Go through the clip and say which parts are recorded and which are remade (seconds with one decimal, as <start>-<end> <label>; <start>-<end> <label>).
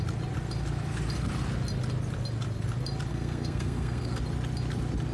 0.0-3.1 recorded; 3.1-4.2 remade; 4.2-5.1 recorded